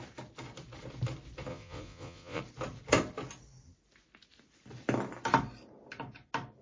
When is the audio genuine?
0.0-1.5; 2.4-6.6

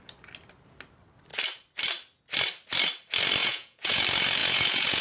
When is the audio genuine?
0.0-3.4; 4.0-4.4